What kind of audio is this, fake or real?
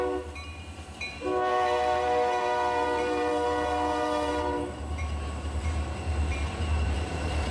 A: fake